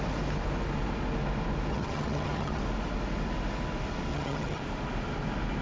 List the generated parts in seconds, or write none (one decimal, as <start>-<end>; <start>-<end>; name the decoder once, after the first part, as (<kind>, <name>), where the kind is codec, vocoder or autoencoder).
1.7-2.6 (vocoder, HiFi-GAN); 4.1-4.6